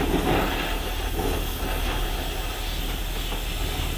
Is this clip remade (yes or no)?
no